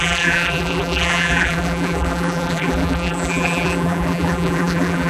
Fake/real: fake